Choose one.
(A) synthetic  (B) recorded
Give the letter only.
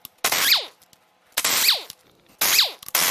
B